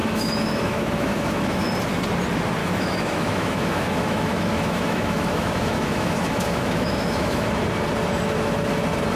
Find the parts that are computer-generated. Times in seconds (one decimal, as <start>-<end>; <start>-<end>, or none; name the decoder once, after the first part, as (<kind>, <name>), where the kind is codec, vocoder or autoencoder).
0.0-1.7 (autoencoder, DAC-VAE); 2.6-7.6